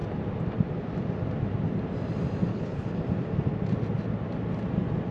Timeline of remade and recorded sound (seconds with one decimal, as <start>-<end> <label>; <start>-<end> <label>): 0.0-2.5 recorded; 2.5-3.0 remade; 3.0-5.1 recorded